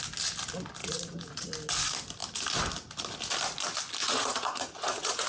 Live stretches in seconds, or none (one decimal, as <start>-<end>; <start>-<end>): 0.0-0.8; 1.5-4.0